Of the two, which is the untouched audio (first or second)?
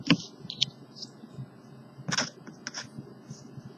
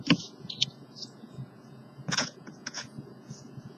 first